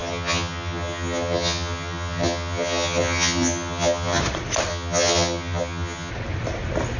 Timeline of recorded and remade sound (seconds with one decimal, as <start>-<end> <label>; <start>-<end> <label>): 0.0-4.2 remade; 4.2-4.7 recorded; 4.7-6.1 remade; 6.1-7.0 recorded